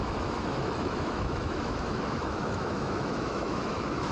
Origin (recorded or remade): remade